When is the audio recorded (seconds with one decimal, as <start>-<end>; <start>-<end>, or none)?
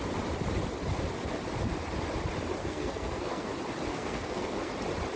0.0-2.6; 3.5-3.9; 4.7-5.2